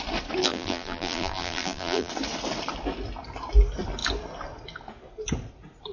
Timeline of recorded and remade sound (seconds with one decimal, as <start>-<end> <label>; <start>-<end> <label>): 0.0-0.4 recorded; 0.4-2.1 remade; 2.1-5.9 recorded